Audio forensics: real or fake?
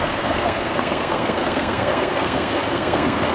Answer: fake